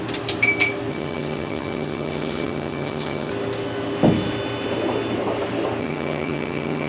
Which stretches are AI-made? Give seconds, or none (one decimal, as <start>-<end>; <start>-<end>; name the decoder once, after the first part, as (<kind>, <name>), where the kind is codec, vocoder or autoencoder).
0.9-3.3 (vocoder, HiFi-GAN); 5.8-6.9